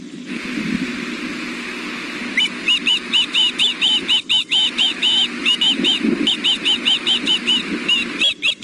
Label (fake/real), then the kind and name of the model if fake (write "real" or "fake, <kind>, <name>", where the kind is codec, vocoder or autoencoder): real